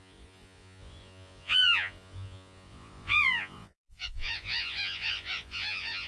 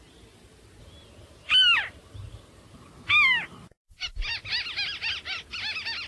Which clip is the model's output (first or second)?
first